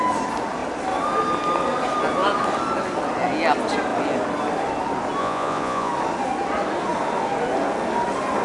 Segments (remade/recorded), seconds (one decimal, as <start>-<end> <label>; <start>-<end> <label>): 0.0-5.2 recorded; 5.2-5.9 remade; 5.9-8.4 recorded